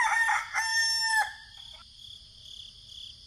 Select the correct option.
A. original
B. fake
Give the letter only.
A